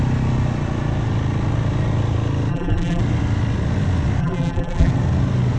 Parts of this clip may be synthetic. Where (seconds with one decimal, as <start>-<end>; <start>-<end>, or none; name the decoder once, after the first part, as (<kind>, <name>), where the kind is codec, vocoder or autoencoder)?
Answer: 2.5-3.0 (vocoder, BigVGAN v2); 4.2-4.9